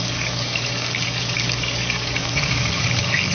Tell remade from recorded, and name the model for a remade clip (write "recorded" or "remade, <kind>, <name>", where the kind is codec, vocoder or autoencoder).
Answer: remade, codec, DAC